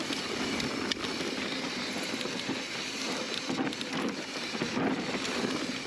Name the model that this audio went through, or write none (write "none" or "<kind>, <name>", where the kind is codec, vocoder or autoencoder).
none